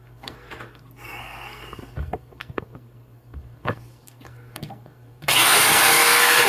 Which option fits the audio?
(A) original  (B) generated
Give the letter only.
B